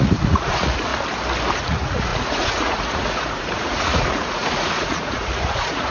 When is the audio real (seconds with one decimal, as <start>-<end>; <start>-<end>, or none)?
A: 0.9-1.6

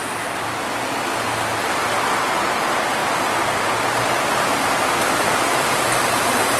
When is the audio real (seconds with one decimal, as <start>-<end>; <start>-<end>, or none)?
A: 0.0-3.0

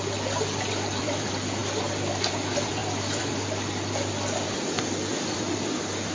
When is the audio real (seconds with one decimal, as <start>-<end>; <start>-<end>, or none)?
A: none

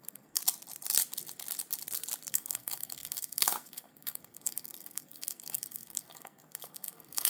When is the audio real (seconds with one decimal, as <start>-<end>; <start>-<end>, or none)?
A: 0.4-2.3